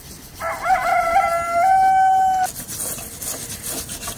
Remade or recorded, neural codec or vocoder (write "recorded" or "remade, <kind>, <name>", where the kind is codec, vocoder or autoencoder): recorded